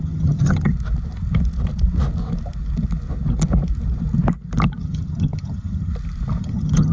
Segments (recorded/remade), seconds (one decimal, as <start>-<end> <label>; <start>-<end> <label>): 0.0-0.7 remade; 0.7-4.8 recorded; 4.8-5.9 remade; 5.9-6.4 recorded; 6.4-6.9 remade